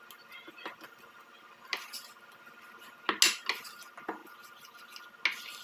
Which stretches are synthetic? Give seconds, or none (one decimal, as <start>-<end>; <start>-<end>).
none